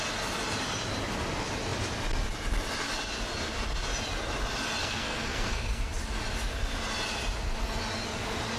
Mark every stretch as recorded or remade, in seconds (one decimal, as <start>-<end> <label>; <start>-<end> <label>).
0.0-4.8 recorded; 4.8-5.9 remade; 5.9-8.6 recorded